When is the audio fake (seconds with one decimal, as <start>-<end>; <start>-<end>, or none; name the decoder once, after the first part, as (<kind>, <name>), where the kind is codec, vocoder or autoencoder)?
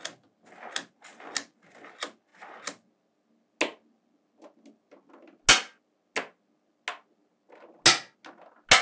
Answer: none